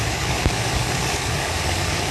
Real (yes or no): no